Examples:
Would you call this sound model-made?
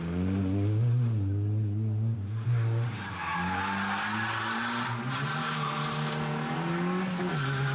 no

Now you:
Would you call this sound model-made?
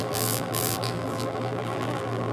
yes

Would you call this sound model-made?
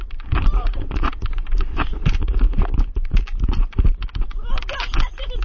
yes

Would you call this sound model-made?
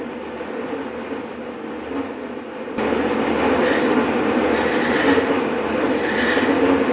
no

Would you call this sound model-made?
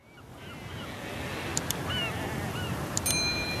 no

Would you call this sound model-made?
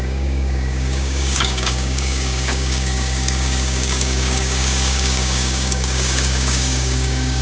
yes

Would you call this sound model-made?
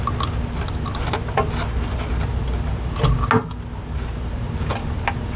no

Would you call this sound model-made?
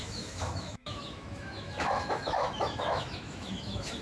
yes